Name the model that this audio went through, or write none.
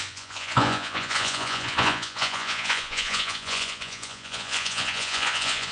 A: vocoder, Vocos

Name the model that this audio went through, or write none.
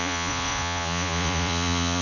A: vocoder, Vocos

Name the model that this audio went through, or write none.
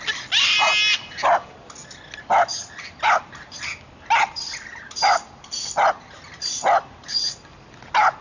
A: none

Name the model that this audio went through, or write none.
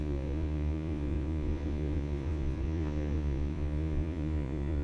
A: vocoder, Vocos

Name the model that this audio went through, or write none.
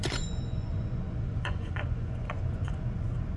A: vocoder, Vocos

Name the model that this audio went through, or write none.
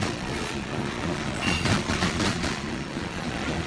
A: vocoder, Vocos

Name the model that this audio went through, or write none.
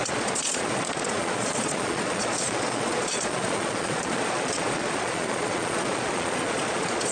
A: vocoder, Vocos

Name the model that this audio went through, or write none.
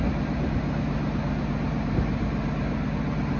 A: none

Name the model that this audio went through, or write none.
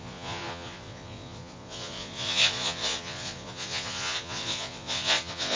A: vocoder, Vocos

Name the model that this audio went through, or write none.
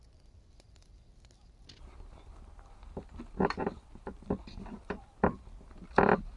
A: none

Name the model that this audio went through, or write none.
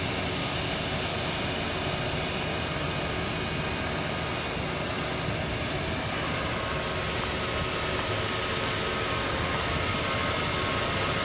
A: none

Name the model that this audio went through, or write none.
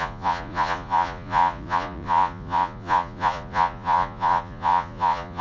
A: vocoder, Vocos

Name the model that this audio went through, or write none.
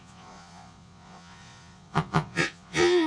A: vocoder, Vocos